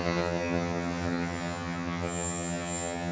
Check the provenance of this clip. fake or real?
fake